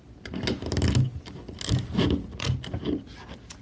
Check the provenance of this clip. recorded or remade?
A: recorded